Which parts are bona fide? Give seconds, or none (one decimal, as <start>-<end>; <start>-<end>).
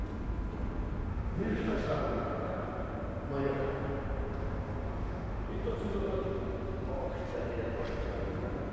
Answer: 0.0-1.1; 2.0-4.9; 5.5-8.7